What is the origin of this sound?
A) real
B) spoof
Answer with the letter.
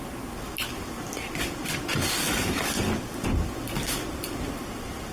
A